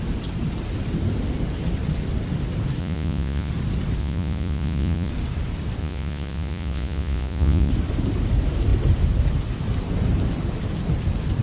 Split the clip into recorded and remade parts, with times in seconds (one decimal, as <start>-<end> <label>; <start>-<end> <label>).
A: 0.0-2.8 recorded; 2.8-3.5 remade; 3.5-4.0 recorded; 4.0-5.1 remade; 5.1-5.8 recorded; 5.8-7.7 remade; 7.7-11.4 recorded